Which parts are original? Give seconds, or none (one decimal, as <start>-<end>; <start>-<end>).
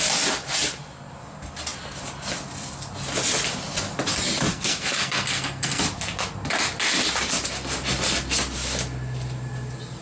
0.0-4.5; 5.8-10.0